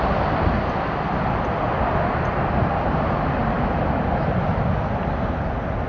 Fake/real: real